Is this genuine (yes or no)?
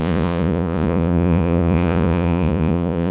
no